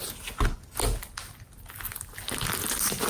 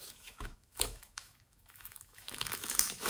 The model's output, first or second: second